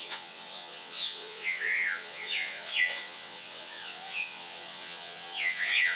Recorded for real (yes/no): no